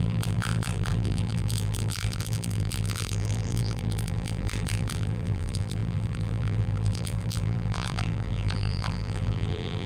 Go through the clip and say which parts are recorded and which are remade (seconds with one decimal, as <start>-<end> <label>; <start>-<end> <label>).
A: 0.0-9.9 remade